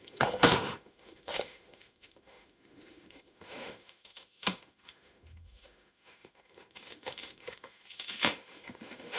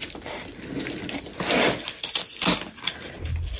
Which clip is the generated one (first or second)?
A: first